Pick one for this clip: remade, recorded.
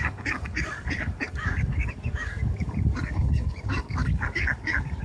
remade